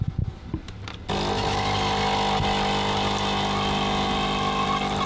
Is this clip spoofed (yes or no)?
no